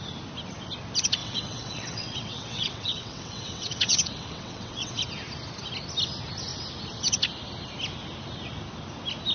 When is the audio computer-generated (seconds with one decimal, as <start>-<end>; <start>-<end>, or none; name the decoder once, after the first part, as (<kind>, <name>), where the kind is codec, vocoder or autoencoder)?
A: 1.2-5.0 (vocoder, WaveNeXt)